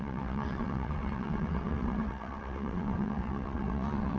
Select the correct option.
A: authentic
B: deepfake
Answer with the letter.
B